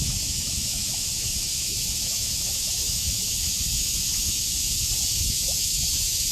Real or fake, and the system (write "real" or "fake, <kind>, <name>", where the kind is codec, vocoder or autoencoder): fake, autoencoder, DAC-VAE